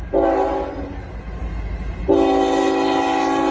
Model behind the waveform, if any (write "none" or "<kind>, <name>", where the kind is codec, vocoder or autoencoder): none